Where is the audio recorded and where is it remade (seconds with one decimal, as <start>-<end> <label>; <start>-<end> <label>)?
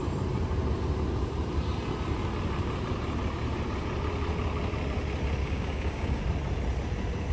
0.0-5.4 recorded; 5.4-6.2 remade; 6.2-7.3 recorded